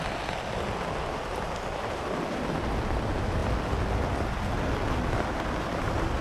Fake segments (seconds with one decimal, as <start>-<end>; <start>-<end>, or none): none